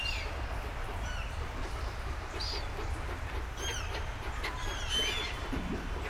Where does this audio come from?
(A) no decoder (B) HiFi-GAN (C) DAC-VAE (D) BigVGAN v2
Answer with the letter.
D